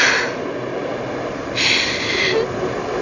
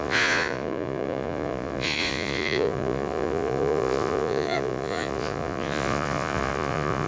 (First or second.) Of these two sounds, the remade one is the second